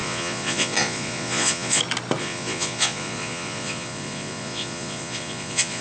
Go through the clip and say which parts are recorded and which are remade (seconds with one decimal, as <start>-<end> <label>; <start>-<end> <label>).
0.0-1.8 remade; 1.8-2.2 recorded; 2.2-5.8 remade